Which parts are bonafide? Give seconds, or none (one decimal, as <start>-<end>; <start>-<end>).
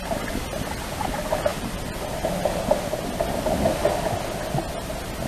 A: 0.0-5.3